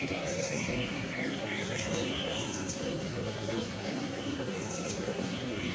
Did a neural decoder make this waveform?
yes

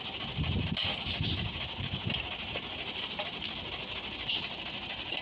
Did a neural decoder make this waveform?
no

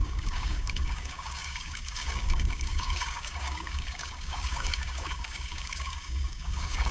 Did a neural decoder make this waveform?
yes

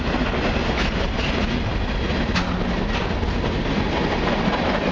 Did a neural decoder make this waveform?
no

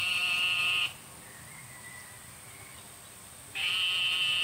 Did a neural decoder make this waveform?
yes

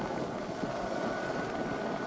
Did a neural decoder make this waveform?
no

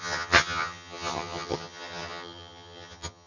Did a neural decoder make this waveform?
yes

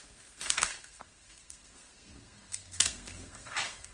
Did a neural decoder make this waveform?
yes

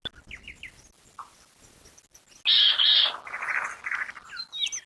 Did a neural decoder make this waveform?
no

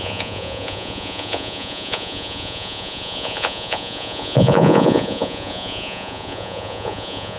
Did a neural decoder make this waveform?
yes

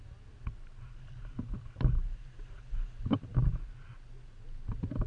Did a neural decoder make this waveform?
no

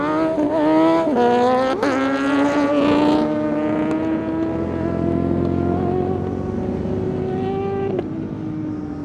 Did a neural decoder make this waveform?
no